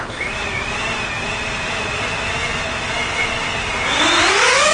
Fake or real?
real